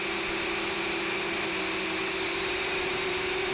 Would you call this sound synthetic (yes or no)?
no